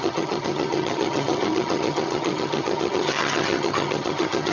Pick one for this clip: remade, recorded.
remade